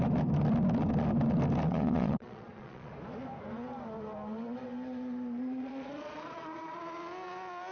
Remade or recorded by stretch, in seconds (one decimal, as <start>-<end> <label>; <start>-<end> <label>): 0.0-1.7 recorded; 1.7-2.9 remade; 2.9-5.4 recorded; 5.4-6.8 remade; 6.8-7.7 recorded